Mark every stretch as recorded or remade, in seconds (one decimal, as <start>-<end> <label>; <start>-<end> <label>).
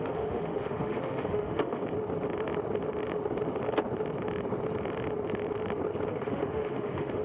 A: 0.0-1.8 remade; 1.8-6.1 recorded; 6.1-7.2 remade